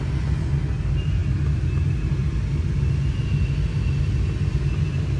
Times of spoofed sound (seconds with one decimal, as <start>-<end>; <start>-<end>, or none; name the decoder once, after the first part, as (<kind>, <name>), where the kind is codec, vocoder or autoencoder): none